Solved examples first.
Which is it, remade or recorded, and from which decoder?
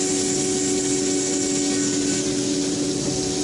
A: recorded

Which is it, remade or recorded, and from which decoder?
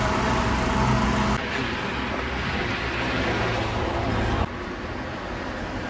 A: recorded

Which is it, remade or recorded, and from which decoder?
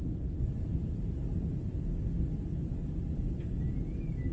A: recorded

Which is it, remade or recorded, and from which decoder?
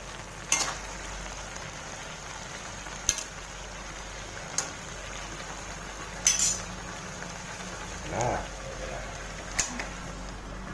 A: recorded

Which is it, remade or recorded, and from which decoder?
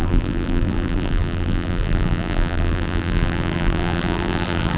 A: remade, vocoder, BigVGAN v2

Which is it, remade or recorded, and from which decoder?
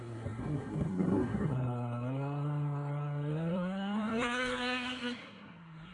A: remade, codec, SNAC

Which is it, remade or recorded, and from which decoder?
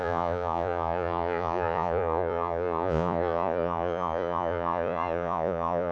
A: remade, vocoder, Vocos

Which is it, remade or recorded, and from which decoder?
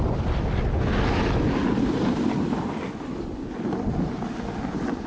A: recorded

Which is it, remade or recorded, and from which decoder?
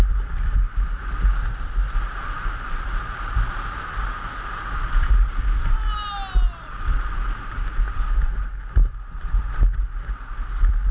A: recorded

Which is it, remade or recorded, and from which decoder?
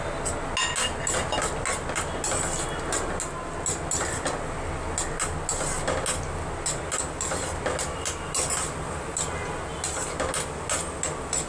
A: recorded